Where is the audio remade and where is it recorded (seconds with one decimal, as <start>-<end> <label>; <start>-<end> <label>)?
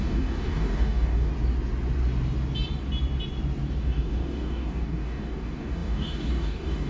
0.0-1.3 remade; 1.3-3.8 recorded; 3.8-6.9 remade